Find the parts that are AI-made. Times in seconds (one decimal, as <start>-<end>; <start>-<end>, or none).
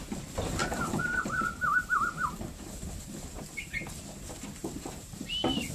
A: 0.6-4.0; 4.6-5.3